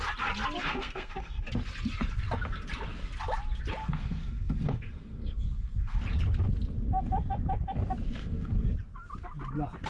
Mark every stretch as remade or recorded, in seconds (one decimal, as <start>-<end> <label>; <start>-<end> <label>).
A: 0.0-0.6 recorded; 0.6-1.4 remade; 1.4-3.8 recorded; 3.8-6.0 remade; 6.0-8.2 recorded; 8.2-8.7 remade; 8.7-9.9 recorded